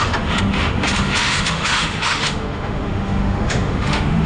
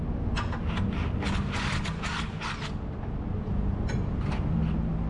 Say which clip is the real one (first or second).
second